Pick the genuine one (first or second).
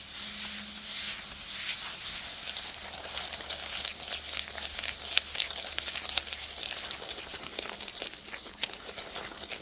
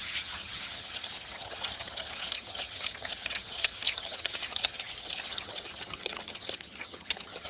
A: first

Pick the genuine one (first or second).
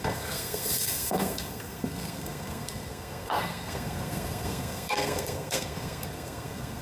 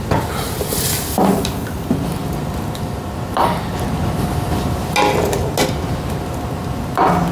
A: second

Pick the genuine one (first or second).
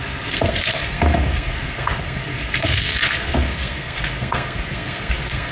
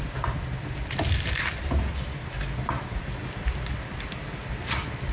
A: second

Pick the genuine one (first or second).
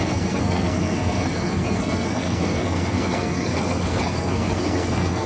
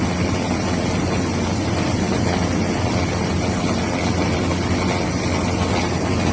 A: second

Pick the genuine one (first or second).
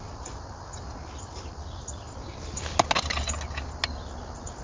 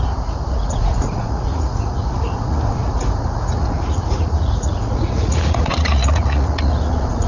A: first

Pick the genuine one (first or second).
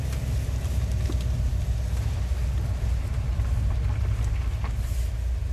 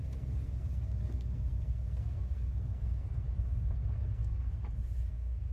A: first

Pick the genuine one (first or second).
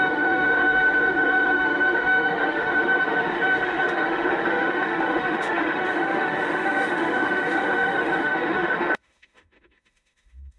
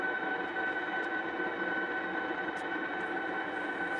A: second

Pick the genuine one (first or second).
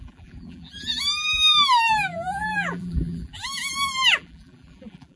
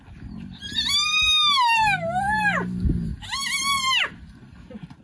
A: second